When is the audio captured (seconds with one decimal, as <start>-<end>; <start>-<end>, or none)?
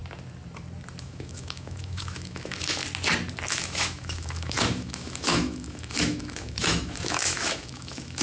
0.0-1.0; 2.8-3.5